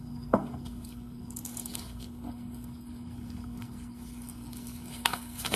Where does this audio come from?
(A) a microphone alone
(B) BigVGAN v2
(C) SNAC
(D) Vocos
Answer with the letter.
C